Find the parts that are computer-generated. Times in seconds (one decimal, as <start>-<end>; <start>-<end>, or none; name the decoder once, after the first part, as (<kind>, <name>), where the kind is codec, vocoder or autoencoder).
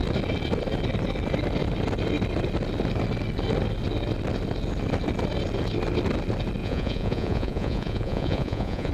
6.6-8.9 (vocoder, Vocos)